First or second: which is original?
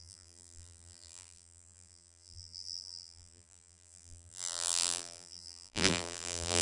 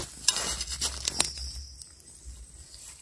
second